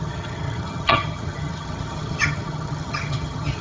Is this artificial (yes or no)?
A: yes